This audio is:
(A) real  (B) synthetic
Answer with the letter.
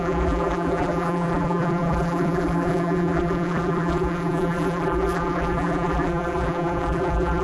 B